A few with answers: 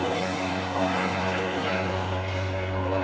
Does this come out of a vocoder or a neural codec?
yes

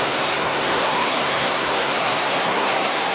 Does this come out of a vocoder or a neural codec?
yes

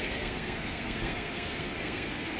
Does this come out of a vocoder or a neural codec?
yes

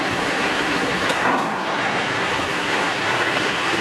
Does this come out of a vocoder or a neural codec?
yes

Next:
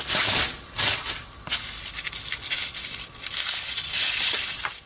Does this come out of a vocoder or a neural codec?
no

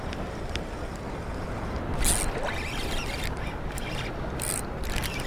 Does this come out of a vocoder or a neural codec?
no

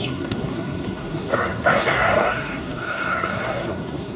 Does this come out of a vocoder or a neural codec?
yes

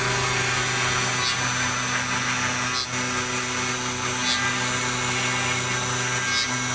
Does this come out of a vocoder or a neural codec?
no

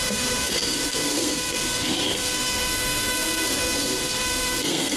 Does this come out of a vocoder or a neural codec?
yes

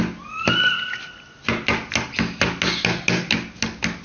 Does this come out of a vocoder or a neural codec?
no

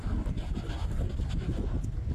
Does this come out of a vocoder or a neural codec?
no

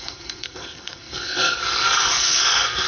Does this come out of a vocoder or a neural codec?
yes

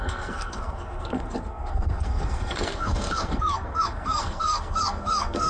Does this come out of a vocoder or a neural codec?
yes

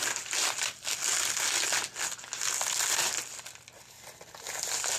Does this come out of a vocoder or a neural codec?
no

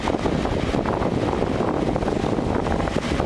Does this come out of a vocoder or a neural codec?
no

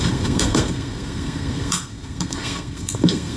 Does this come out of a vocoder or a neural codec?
yes